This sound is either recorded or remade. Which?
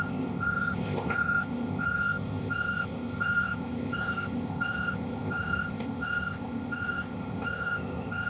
remade